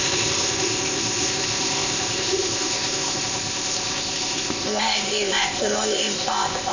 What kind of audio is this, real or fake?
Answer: fake